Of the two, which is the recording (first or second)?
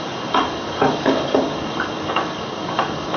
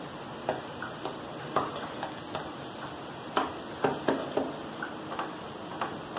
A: second